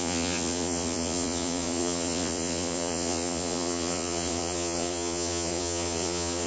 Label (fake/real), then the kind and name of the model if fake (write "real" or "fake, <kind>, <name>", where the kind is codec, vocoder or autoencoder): fake, vocoder, Vocos